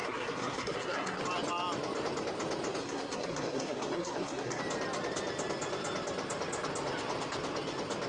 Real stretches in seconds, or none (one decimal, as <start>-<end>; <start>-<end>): 1.2-2.8; 4.6-8.1